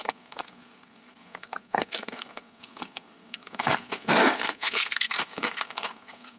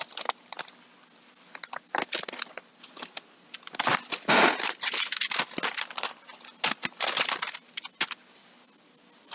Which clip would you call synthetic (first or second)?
first